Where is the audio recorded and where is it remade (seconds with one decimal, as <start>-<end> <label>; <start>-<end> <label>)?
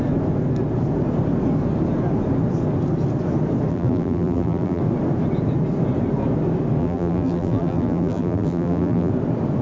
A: 0.0-3.7 recorded; 3.7-4.8 remade; 4.8-6.8 recorded; 6.8-9.1 remade; 9.1-9.6 recorded